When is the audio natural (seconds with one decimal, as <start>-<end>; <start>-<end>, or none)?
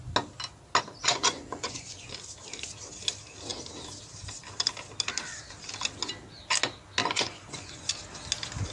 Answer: 0.0-1.0; 2.1-7.0; 7.9-8.7